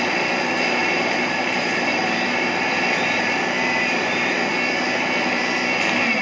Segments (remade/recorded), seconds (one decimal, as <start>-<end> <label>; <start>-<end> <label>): 0.0-0.8 recorded; 0.8-4.5 remade; 4.5-6.2 recorded